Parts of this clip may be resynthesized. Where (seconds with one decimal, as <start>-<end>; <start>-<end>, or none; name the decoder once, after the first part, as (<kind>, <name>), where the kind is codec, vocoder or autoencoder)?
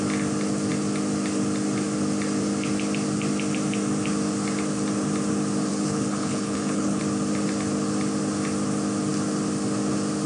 5.7-7.0 (codec, HILCodec)